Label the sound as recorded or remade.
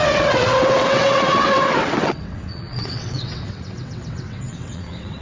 remade